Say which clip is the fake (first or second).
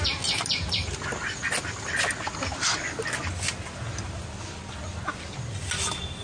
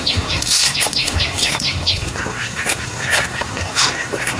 second